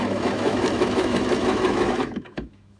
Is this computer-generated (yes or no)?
yes